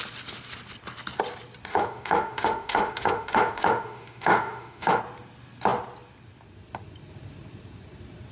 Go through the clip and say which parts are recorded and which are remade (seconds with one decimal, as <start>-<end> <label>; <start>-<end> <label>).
0.0-1.7 recorded; 1.7-5.0 remade; 5.0-8.3 recorded